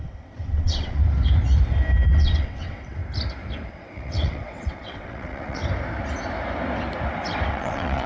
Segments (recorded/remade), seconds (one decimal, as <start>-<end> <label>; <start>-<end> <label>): 0.0-1.0 remade; 1.0-2.1 recorded; 2.1-3.0 remade; 3.0-3.7 recorded; 3.7-5.6 remade; 5.6-7.5 recorded; 7.5-8.1 remade